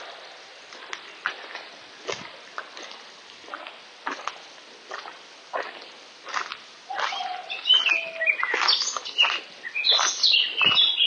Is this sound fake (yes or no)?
no